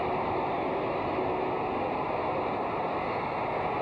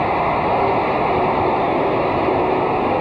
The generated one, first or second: second